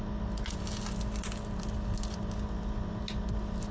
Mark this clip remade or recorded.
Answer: recorded